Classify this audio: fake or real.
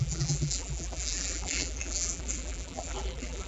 fake